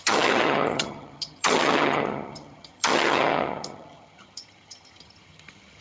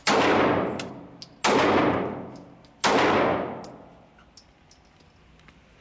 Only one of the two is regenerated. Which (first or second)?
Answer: first